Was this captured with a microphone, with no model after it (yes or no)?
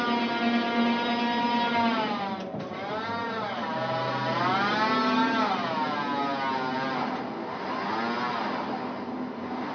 yes